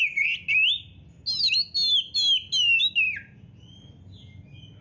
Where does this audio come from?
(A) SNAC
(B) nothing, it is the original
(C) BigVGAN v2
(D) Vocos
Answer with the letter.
B